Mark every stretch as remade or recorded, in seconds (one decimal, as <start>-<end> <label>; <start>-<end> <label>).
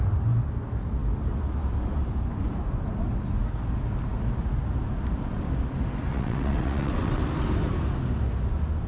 0.0-6.1 recorded; 6.1-7.2 remade; 7.2-8.9 recorded